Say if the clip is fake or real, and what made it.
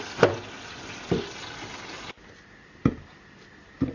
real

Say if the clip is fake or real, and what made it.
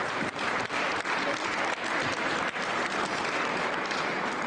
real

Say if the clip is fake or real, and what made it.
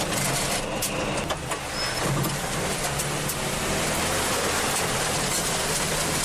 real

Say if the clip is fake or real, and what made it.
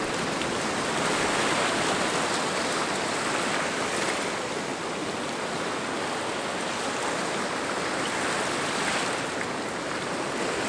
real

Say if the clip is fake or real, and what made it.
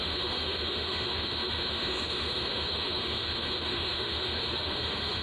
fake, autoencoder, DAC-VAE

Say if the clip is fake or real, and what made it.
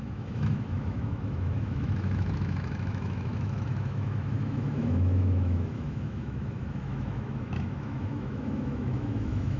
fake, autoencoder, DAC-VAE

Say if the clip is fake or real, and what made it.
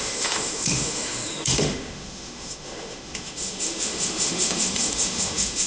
fake, autoencoder, DAC-VAE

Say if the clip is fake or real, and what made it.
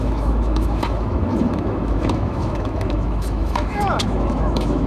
fake, autoencoder, DAC-VAE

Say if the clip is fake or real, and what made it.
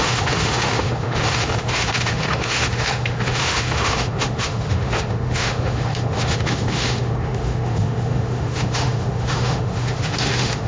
fake, autoencoder, DAC-VAE